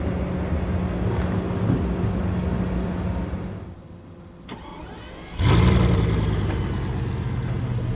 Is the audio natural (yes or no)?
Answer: yes